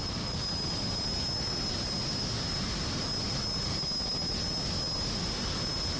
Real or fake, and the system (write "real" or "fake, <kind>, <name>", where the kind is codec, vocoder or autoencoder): real